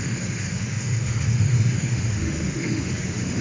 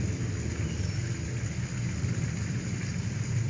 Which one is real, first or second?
second